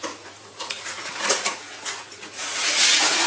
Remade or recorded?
remade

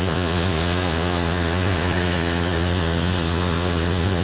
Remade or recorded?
remade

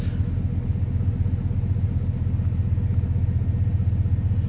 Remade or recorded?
recorded